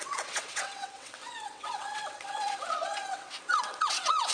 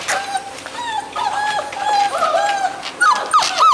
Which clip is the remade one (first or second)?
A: first